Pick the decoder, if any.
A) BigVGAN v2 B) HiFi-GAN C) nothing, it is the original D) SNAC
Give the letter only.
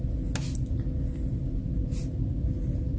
C